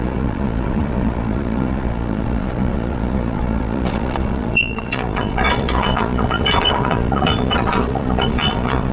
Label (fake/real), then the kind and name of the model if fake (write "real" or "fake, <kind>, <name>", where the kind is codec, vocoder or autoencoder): fake, vocoder, Vocos